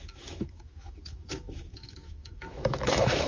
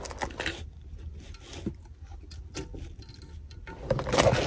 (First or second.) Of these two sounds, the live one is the second